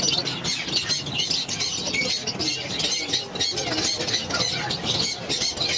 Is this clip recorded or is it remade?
recorded